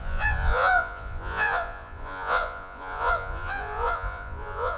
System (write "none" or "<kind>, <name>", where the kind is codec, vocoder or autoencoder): vocoder, Vocos